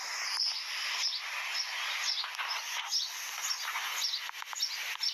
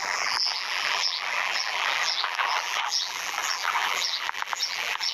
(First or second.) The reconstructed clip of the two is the second